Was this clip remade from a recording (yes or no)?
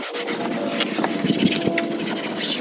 no